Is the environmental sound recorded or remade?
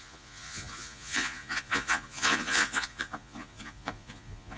remade